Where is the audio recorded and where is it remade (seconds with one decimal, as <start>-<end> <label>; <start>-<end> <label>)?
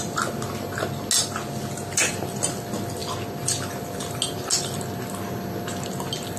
0.0-6.4 recorded